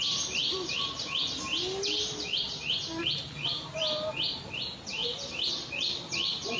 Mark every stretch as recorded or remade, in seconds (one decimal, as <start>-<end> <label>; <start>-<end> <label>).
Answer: 0.0-6.6 recorded